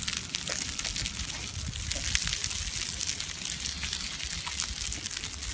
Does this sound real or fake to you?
real